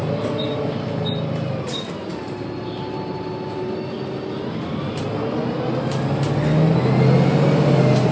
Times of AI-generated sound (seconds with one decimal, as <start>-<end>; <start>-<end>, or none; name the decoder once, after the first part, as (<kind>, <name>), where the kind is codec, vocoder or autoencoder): none